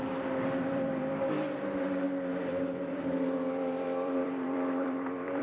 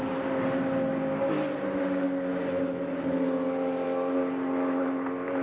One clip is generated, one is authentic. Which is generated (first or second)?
first